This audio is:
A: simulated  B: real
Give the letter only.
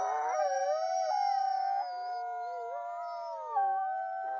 B